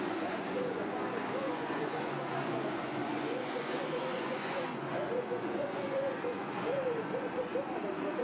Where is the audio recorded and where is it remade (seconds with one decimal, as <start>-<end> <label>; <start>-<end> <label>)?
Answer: 0.0-8.2 remade